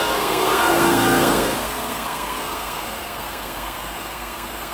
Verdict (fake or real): fake